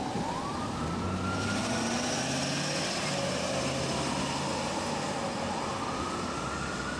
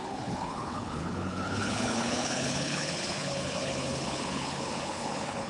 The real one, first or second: first